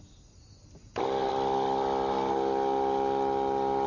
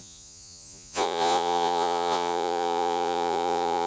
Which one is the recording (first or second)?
first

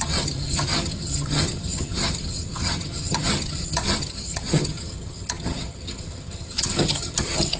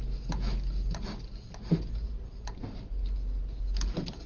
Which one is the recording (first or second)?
second